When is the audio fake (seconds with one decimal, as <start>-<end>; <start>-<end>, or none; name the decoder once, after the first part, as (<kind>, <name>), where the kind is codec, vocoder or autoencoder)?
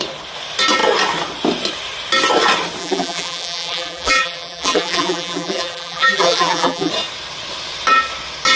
2.8-6.9 (vocoder, BigVGAN v2)